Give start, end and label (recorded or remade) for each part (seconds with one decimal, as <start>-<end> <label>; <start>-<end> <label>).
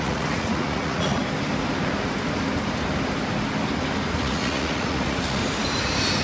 0.0-1.2 remade; 1.2-4.2 recorded; 4.2-5.4 remade; 5.4-6.2 recorded